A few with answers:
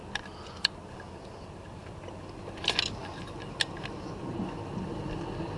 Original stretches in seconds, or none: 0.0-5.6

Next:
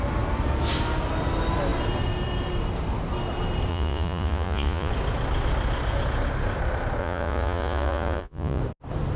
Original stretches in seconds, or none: 0.0-3.7; 4.9-7.0; 8.6-9.2

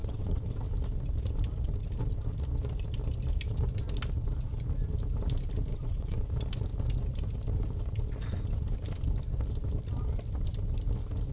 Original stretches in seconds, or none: 0.6-5.7; 6.3-11.3

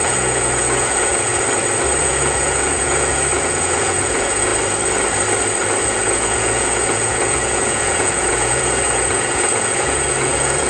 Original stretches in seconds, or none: 1.3-2.0; 4.5-5.8

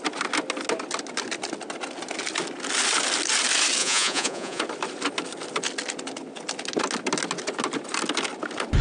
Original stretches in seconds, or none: 0.0-3.8; 4.6-8.8

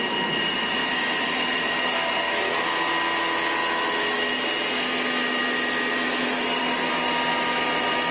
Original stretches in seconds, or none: 0.0-0.8; 1.7-5.4; 6.6-8.1

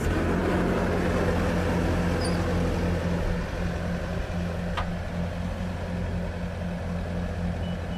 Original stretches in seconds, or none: 0.0-8.0